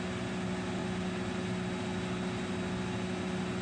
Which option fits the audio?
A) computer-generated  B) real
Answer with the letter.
B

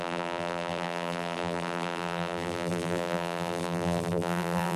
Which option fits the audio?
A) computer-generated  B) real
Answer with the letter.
A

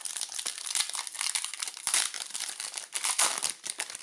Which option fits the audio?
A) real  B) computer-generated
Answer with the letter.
A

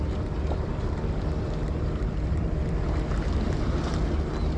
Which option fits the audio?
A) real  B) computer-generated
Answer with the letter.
A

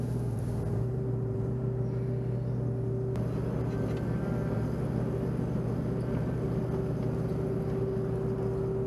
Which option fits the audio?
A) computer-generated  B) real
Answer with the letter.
B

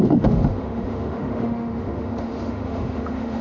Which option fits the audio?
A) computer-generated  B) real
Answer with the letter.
A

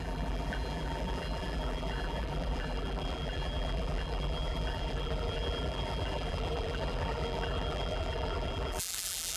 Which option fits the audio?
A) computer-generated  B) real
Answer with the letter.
A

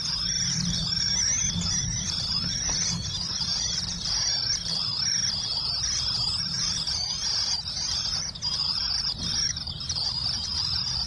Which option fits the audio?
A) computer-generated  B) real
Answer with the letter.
A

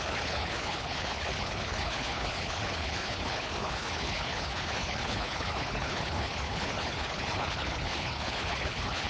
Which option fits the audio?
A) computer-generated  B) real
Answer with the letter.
A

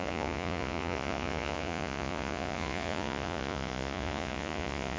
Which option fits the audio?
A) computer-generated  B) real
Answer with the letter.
A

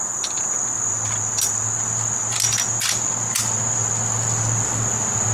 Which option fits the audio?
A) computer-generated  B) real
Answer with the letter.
B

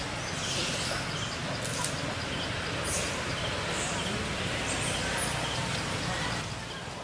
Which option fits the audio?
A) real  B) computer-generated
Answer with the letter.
A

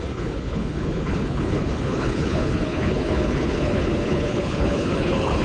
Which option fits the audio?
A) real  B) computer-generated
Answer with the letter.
B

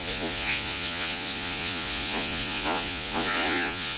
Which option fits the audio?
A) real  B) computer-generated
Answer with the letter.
B